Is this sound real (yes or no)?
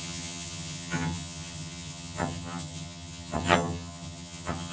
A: no